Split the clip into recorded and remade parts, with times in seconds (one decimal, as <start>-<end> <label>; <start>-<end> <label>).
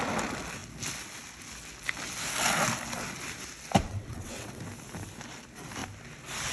0.0-3.9 recorded; 3.9-4.6 remade; 4.6-6.5 recorded